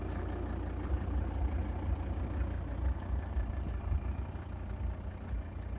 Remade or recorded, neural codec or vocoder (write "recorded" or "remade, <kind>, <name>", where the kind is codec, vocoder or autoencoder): recorded